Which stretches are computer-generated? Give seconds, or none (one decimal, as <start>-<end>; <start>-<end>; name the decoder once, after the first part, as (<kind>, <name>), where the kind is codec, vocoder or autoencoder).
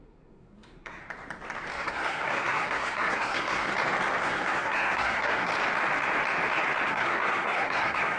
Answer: 0.0-1.0 (codec, SNAC); 1.7-3.7; 4.2-5.5; 6.9-8.2